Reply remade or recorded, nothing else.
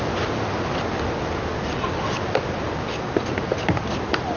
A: recorded